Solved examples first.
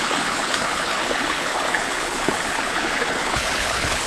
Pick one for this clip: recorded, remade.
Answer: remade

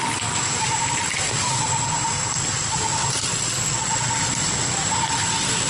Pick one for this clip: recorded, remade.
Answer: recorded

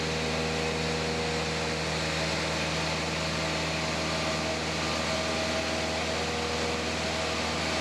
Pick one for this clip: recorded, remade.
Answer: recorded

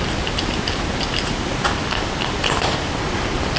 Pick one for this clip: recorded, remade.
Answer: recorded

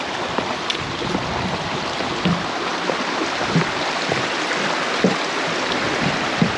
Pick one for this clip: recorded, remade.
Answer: recorded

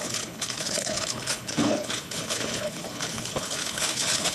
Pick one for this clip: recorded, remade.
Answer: remade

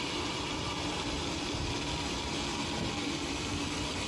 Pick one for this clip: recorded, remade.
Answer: recorded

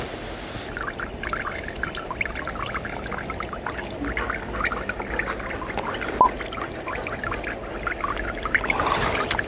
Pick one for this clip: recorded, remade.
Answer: recorded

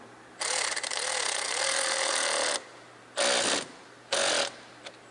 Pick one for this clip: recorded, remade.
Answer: recorded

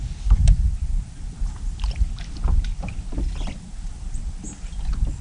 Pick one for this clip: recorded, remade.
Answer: recorded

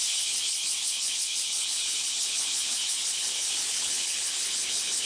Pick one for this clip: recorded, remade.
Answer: remade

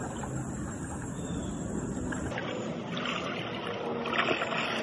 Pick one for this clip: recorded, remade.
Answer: recorded